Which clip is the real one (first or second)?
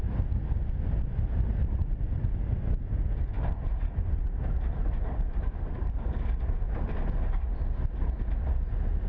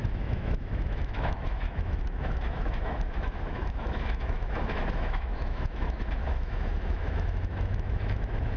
first